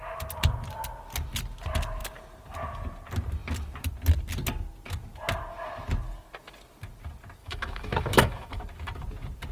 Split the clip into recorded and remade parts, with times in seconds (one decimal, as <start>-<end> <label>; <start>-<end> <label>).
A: 0.0-7.4 recorded; 7.4-8.6 remade; 8.6-9.5 recorded